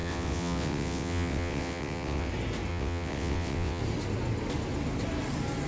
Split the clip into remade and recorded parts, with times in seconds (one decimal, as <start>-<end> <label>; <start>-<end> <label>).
0.0-2.3 remade; 2.3-2.7 recorded; 2.7-3.8 remade; 3.8-5.7 recorded